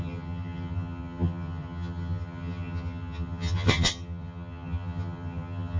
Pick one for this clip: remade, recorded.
remade